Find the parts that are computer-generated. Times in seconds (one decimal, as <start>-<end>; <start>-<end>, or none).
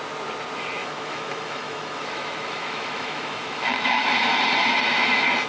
0.8-4.1